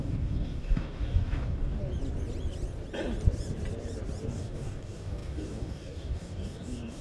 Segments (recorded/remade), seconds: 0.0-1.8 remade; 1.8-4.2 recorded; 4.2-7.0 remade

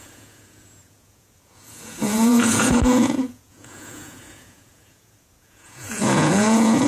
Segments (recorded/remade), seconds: 0.0-6.9 remade

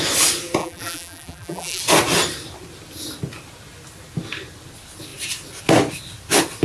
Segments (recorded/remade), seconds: 0.0-0.6 recorded; 0.6-1.8 remade; 1.8-6.6 recorded

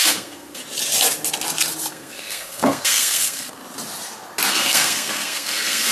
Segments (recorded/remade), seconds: 0.0-0.6 remade; 0.6-1.9 recorded; 1.9-3.6 remade; 3.6-4.5 recorded; 4.5-5.9 remade

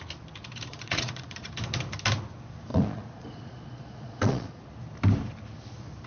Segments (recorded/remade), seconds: 0.0-0.7 recorded; 0.7-1.5 remade; 1.5-2.7 recorded; 2.7-4.7 remade; 4.7-6.1 recorded

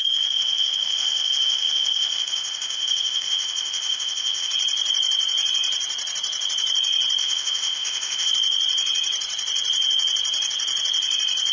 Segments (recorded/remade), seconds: 0.0-4.5 remade; 4.5-7.2 recorded; 7.2-8.3 remade; 8.3-11.5 recorded